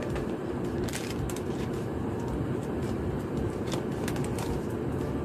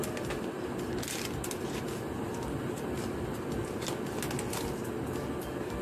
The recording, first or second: second